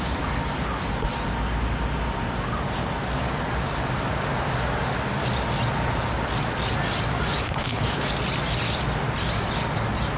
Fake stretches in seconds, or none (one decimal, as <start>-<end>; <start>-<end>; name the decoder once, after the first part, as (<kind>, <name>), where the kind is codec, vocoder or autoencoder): 7.3-8.1 (codec, HILCodec)